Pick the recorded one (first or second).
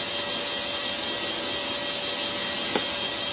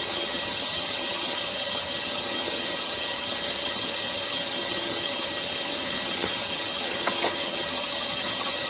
first